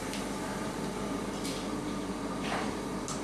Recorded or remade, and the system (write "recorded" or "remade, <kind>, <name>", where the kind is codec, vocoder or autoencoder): remade, vocoder, BigVGAN v2